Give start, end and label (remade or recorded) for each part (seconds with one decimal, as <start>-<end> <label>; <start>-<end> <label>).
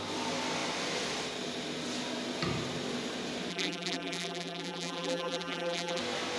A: 0.0-3.5 recorded; 3.5-6.0 remade; 6.0-6.4 recorded